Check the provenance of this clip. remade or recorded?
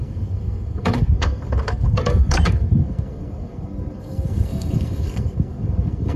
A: remade